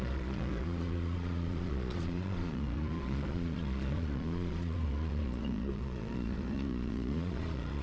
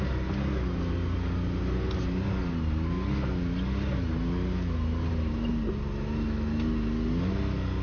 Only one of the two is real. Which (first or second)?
second